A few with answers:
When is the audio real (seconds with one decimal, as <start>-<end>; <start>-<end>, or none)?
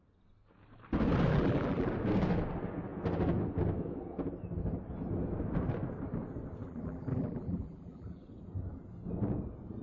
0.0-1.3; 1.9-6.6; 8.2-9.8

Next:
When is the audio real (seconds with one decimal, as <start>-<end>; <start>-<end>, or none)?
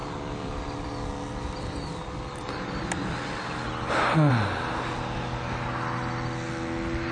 0.0-7.1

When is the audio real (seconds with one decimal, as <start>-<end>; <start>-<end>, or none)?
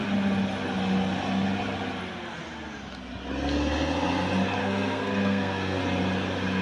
0.0-4.6; 5.8-6.6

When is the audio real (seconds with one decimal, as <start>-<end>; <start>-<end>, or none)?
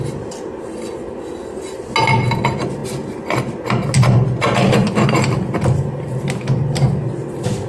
0.0-7.7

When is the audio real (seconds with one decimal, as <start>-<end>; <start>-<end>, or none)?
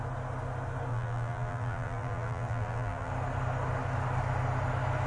0.0-0.9; 3.1-5.1